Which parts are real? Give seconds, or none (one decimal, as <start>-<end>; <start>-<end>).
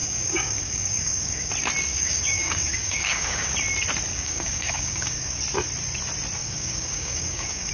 1.5-1.9; 3.5-4.1; 5.4-6.4